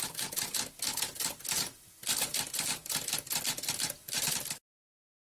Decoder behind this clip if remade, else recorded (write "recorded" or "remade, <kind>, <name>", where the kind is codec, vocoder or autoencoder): recorded